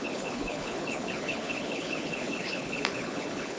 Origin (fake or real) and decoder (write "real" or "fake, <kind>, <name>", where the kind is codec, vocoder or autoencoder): fake, codec, HILCodec